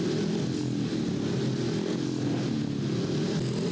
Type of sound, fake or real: real